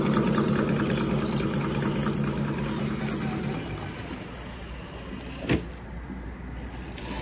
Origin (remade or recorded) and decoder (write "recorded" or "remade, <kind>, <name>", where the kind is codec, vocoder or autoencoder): recorded